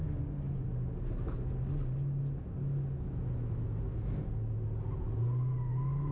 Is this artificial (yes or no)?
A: no